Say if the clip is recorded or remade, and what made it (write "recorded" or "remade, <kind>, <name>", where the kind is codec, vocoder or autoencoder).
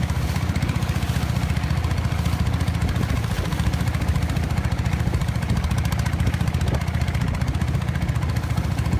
recorded